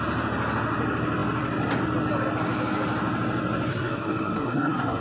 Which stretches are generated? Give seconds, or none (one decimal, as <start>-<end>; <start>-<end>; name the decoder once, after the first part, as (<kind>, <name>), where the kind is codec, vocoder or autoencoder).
3.7-5.0 (codec, SNAC)